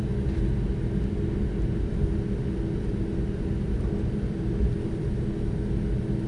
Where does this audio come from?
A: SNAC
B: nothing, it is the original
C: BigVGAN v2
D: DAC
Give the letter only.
B